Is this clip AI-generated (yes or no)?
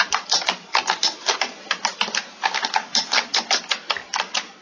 no